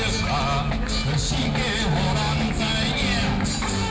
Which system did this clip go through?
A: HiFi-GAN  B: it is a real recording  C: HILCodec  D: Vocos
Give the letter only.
B